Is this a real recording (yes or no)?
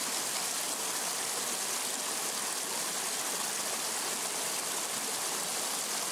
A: yes